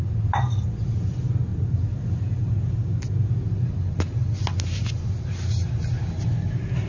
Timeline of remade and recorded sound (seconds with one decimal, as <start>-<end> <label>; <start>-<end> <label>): 0.0-6.9 recorded